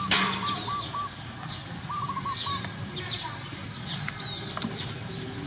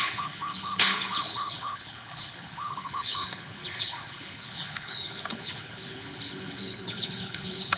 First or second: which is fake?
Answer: second